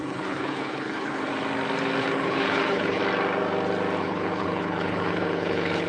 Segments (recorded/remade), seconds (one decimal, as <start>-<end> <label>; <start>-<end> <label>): 0.0-1.3 remade; 1.3-2.0 recorded; 2.0-3.0 remade; 3.0-4.0 recorded; 4.0-5.9 remade